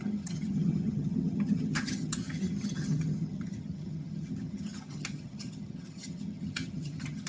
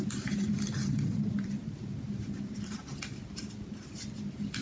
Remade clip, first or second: first